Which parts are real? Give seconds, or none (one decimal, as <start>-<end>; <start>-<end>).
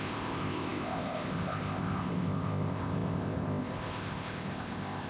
none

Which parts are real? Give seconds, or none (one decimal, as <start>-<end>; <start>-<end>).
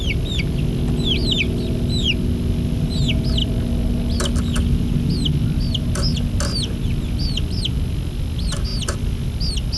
0.0-9.8